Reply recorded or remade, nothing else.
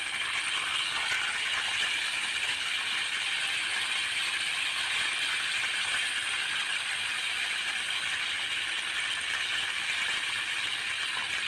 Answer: recorded